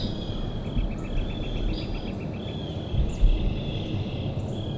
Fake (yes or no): no